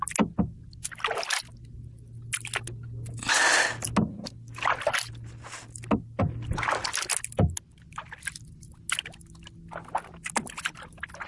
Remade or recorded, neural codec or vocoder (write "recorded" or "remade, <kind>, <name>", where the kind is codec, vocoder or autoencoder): recorded